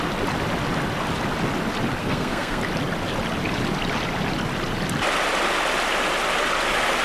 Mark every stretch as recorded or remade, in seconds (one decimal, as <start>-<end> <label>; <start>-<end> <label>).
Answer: 0.0-2.0 recorded; 2.0-2.6 remade; 2.6-7.0 recorded

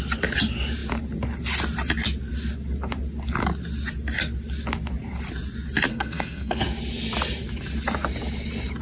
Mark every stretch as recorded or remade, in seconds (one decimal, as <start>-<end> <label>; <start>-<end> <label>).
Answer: 0.0-5.9 recorded; 5.9-6.6 remade; 6.6-8.8 recorded

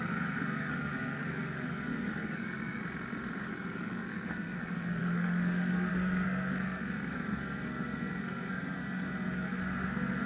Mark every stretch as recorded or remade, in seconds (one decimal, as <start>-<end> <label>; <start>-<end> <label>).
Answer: 0.0-2.8 remade; 2.8-3.4 recorded; 3.4-10.3 remade

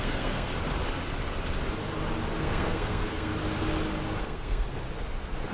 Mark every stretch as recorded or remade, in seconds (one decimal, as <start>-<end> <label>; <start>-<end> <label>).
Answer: 0.0-0.5 remade; 0.5-2.4 recorded; 2.4-3.3 remade; 3.3-4.2 recorded; 4.2-4.8 remade; 4.8-5.5 recorded

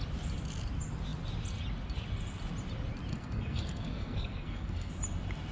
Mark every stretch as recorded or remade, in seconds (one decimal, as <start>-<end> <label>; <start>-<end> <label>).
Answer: 0.0-3.1 recorded; 3.1-4.9 remade; 4.9-5.5 recorded